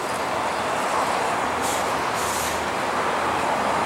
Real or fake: real